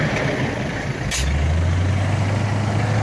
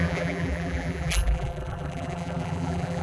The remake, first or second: second